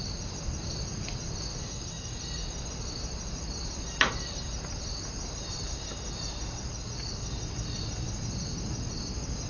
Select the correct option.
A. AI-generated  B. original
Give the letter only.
B